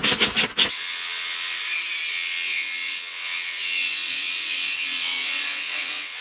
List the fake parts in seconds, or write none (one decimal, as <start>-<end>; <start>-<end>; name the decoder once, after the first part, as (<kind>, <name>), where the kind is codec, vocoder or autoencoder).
0.7-1.6 (vocoder, WaveNeXt); 2.1-6.2